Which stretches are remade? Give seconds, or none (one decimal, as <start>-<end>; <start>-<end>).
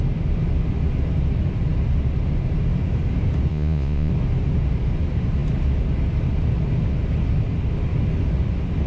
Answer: 3.5-4.1